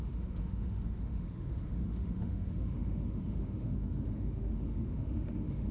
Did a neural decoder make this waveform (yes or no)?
yes